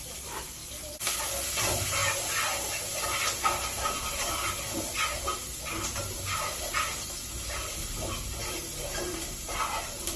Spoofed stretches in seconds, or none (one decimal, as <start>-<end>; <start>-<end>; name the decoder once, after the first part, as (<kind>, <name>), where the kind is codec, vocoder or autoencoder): none